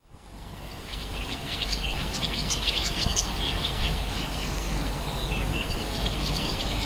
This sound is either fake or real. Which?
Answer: fake